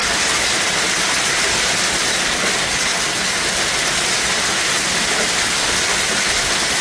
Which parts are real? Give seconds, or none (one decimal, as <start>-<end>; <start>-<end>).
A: 0.0-6.8